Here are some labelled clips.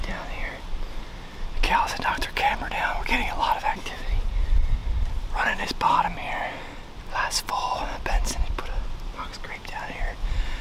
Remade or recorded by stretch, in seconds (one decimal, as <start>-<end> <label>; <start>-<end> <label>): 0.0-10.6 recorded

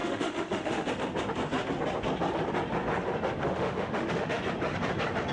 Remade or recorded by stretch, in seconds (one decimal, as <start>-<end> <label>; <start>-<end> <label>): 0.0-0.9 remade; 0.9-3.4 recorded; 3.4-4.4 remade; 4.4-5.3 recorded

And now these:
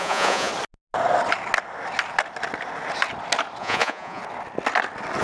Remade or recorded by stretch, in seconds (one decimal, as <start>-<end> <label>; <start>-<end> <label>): 0.0-0.5 remade; 0.5-3.6 recorded; 3.6-4.2 remade; 4.2-5.2 recorded